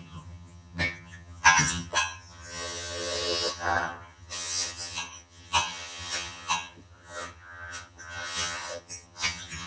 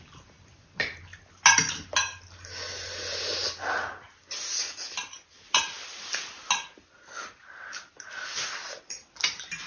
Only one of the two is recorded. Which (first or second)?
second